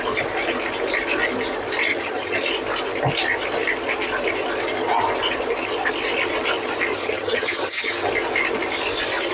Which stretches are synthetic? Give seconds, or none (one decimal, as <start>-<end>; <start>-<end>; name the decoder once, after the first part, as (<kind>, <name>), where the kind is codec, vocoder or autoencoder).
1.9-2.5 (vocoder, HiFi-GAN); 6.9-8.1